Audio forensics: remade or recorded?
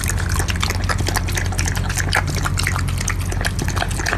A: recorded